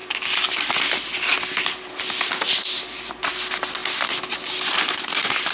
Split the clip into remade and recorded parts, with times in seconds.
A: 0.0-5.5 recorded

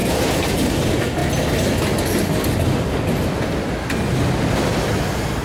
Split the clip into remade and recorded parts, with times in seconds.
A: 0.0-0.7 remade; 0.7-5.4 recorded

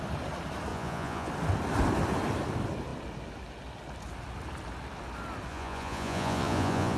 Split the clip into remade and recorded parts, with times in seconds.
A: 0.0-0.7 recorded; 0.7-1.3 remade; 1.3-5.5 recorded; 5.5-7.0 remade

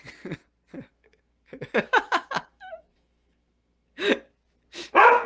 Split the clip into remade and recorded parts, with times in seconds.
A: 0.0-0.9 recorded; 0.9-4.1 remade; 4.1-5.3 recorded